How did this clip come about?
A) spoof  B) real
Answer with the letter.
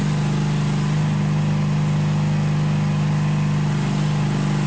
B